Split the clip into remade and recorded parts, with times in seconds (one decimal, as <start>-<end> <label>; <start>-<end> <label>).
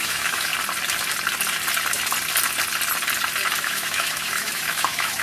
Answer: 0.0-0.5 remade; 0.5-3.6 recorded; 3.6-5.2 remade